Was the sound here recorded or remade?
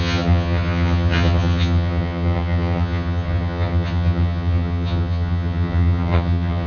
remade